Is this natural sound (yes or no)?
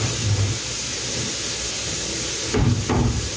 yes